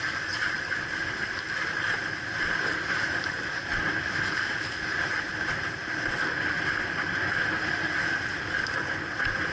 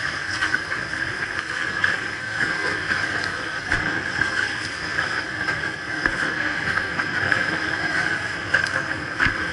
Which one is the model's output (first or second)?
second